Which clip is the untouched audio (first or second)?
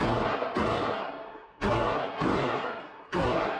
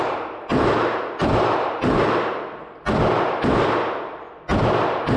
second